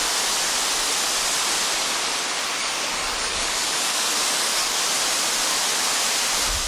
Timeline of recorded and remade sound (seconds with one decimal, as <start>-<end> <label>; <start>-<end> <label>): 0.0-2.6 recorded; 2.6-4.8 remade; 4.8-6.7 recorded